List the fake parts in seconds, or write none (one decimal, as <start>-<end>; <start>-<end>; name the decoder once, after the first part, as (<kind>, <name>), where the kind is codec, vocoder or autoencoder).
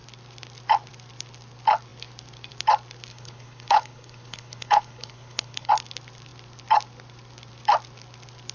3.1-5.7 (codec, HILCodec)